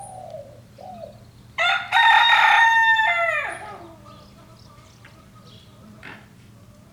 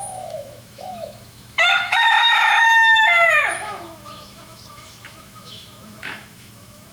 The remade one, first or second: second